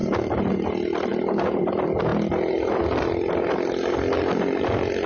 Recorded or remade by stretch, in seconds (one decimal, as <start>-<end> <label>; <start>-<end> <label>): 0.0-0.5 remade; 0.5-1.1 recorded; 1.1-1.7 remade; 1.7-5.1 recorded